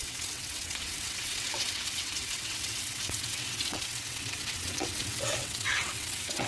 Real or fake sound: fake